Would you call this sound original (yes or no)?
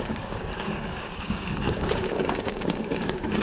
no